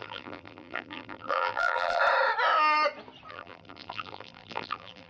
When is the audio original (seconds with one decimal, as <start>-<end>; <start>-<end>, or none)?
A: 2.0-3.3